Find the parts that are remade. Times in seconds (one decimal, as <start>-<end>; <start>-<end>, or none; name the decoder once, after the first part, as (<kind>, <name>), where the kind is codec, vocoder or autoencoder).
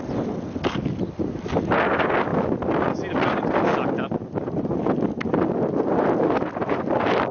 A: none